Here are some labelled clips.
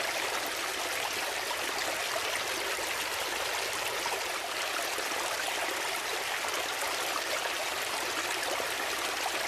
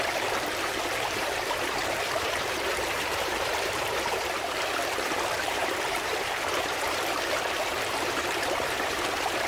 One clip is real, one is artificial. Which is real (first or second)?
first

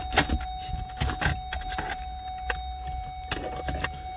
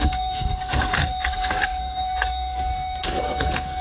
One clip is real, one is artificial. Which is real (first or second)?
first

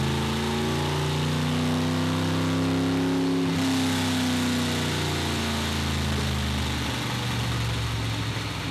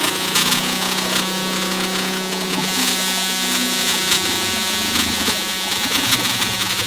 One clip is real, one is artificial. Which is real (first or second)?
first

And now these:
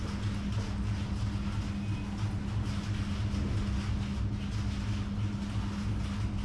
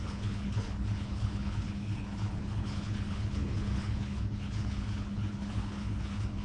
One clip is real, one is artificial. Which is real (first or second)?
first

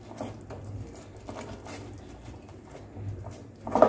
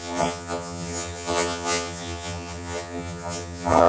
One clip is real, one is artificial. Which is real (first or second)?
first